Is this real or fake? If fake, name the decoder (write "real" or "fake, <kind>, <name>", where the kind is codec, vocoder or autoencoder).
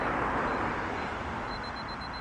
real